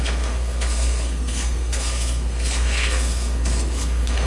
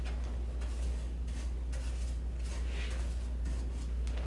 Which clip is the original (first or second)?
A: second